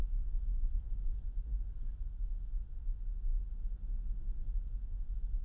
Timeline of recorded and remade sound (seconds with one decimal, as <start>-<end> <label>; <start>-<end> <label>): 0.0-0.9 remade; 0.9-5.4 recorded